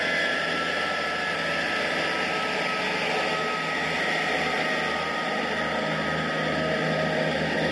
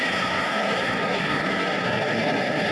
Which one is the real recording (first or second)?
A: first